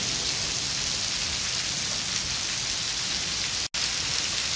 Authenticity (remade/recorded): recorded